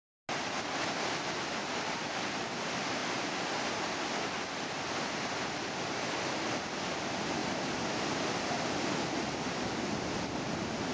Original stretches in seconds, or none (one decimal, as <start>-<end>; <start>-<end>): 0.0-10.9